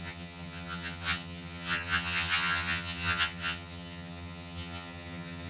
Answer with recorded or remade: remade